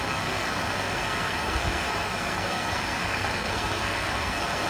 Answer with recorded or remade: remade